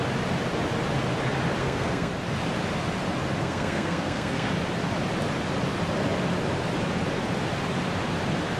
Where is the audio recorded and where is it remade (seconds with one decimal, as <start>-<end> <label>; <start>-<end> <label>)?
0.0-1.6 recorded; 1.6-2.1 remade; 2.1-3.4 recorded; 3.4-4.5 remade; 4.5-8.6 recorded